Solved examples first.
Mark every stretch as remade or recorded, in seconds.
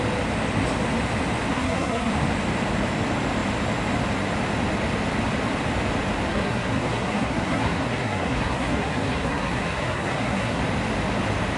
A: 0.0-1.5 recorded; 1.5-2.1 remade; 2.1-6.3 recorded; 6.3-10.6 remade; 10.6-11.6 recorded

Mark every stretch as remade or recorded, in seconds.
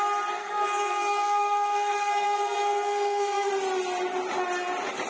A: 0.0-0.4 recorded; 0.4-3.5 remade; 3.5-5.1 recorded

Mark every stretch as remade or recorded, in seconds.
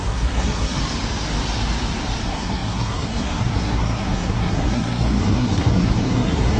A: 0.0-0.8 remade; 0.8-2.2 recorded; 2.2-6.6 remade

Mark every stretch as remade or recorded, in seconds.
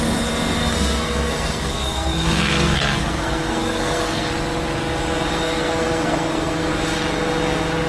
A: 0.0-0.6 recorded; 0.6-4.3 remade; 4.3-5.3 recorded; 5.3-6.7 remade; 6.7-7.9 recorded